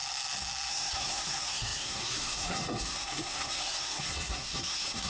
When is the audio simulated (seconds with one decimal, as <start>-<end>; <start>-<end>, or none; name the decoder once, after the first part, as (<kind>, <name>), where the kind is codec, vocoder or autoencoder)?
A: 0.7-5.1 (codec, SNAC)